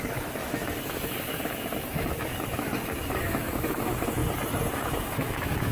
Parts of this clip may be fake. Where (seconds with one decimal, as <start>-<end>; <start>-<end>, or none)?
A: 0.0-4.2; 4.7-5.7